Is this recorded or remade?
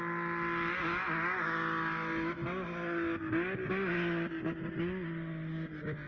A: recorded